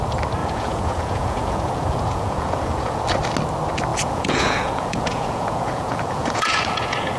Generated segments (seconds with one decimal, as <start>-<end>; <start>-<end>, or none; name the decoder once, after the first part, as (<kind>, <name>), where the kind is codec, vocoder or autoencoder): 0.4-3.0 (vocoder, Vocos); 3.9-7.2